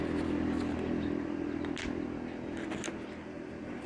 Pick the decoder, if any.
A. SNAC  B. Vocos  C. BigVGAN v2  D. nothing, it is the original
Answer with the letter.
D